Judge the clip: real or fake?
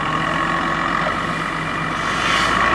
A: real